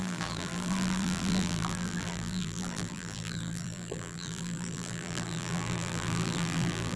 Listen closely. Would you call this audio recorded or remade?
remade